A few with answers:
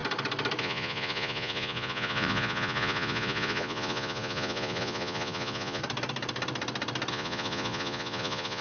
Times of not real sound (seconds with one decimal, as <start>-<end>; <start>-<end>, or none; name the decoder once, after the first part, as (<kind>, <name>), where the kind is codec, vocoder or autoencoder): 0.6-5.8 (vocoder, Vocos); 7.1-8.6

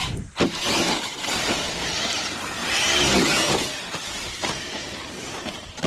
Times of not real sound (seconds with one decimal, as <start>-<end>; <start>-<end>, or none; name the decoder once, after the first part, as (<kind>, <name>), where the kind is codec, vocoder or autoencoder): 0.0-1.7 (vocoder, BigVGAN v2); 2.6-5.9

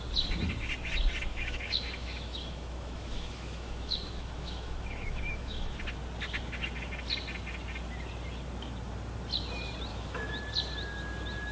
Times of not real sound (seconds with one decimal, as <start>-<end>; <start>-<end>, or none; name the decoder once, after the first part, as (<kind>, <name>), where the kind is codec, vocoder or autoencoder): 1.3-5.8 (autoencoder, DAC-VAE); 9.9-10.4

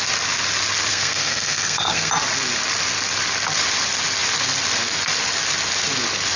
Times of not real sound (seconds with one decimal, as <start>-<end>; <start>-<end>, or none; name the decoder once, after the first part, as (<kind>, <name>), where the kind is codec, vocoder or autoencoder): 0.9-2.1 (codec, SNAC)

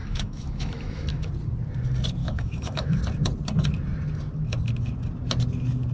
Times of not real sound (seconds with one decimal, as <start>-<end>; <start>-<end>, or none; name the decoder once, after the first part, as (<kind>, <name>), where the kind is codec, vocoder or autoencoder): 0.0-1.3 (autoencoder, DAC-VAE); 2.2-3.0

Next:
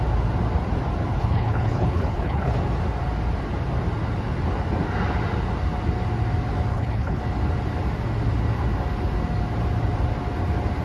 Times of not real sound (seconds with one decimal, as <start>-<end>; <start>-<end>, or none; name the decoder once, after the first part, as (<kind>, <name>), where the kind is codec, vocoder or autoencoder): 1.2-2.5 (codec, HILCodec); 6.7-7.2

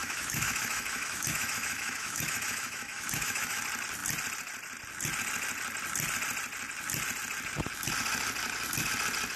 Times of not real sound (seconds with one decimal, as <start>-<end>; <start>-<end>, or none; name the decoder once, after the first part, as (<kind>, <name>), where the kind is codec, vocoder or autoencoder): 0.0-3.6 (autoencoder, DAC-VAE)

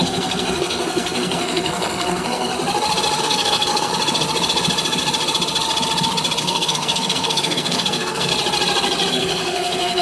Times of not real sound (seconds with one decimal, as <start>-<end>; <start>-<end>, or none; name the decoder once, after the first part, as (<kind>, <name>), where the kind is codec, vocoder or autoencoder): 0.0-2.5 (codec, SNAC); 3.2-3.9; 6.4-8.3; 9.1-10.0